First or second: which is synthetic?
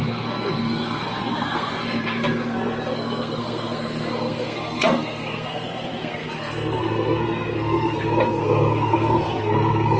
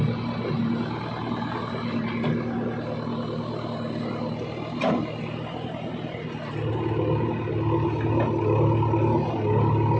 first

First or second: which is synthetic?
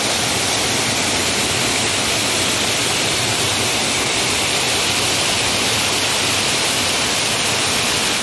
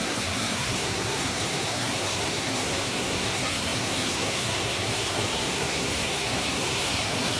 second